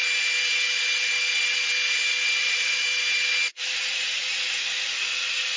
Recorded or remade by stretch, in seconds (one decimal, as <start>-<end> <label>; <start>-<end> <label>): 0.0-2.4 recorded; 2.4-2.8 remade; 2.8-3.6 recorded; 3.6-5.6 remade